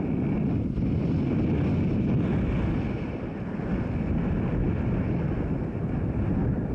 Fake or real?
real